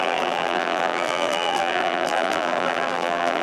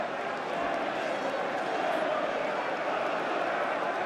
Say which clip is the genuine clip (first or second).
second